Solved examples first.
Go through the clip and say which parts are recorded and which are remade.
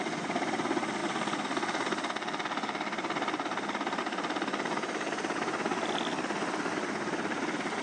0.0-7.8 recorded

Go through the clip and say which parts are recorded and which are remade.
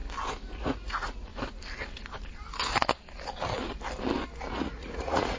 0.0-0.6 recorded; 0.6-1.3 remade; 1.3-4.5 recorded; 4.5-5.4 remade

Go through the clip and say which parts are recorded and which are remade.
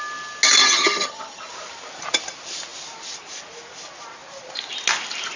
0.0-0.6 recorded; 0.6-1.5 remade; 1.5-5.4 recorded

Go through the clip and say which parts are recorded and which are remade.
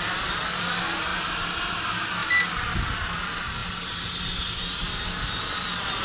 0.0-6.0 recorded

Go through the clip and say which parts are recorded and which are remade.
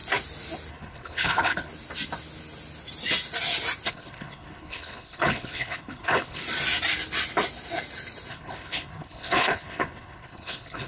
0.0-0.7 recorded; 0.7-1.7 remade; 1.7-3.9 recorded; 3.9-6.4 remade; 6.4-8.3 recorded; 8.3-10.9 remade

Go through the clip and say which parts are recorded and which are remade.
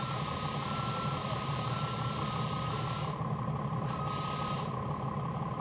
0.0-5.6 recorded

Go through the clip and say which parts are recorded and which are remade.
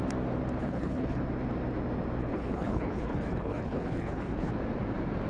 0.0-0.6 recorded; 0.6-1.2 remade; 1.2-2.2 recorded; 2.2-4.5 remade; 4.5-5.3 recorded